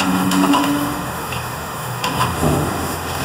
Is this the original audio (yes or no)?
no